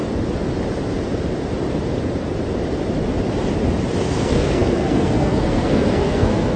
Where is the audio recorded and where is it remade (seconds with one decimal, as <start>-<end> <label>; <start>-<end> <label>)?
0.0-4.0 recorded; 4.0-6.6 remade